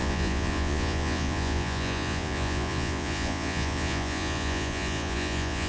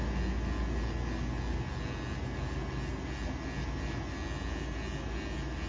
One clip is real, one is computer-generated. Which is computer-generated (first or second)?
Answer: first